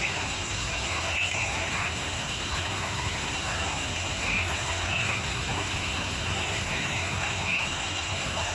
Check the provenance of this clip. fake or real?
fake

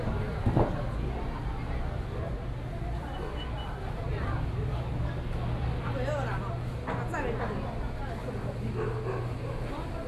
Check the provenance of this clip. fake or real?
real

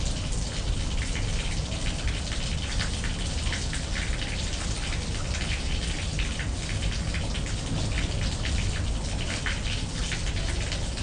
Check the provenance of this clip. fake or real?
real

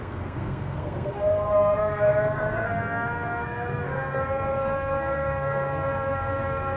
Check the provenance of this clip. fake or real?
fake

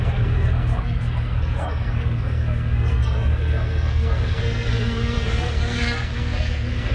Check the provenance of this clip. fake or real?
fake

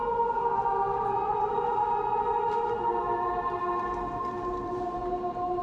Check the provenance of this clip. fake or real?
real